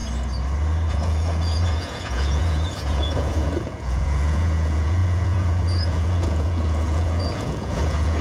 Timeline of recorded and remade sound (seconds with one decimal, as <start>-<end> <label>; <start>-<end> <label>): 0.0-0.9 recorded; 0.9-8.2 remade